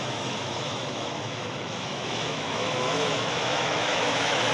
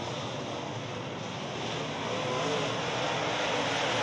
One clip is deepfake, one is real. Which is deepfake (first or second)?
first